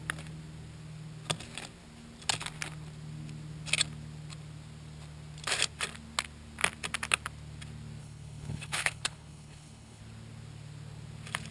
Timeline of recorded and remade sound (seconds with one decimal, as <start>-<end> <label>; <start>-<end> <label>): 0.0-8.0 recorded; 8.0-10.0 remade; 10.0-11.5 recorded